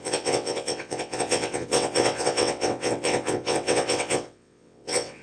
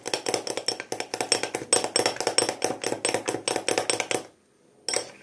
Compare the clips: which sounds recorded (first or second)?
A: second